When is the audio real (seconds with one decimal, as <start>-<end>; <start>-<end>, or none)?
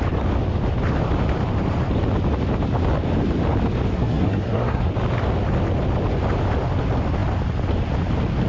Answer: 0.0-3.9; 4.9-8.5